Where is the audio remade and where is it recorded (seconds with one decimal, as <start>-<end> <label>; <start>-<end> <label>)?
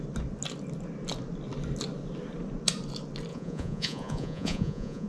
0.0-3.3 recorded; 3.3-5.1 remade